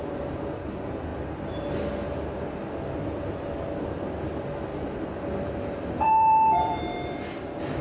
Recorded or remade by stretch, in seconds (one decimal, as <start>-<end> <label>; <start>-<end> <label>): 0.0-4.7 recorded; 4.7-7.8 remade

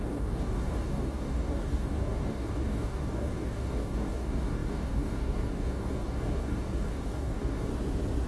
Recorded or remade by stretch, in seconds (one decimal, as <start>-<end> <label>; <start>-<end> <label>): 0.0-7.7 remade; 7.7-8.3 recorded

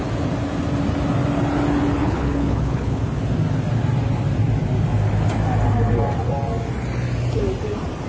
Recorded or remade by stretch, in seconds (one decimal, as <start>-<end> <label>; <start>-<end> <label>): 0.0-2.0 recorded; 2.0-3.0 remade; 3.0-8.1 recorded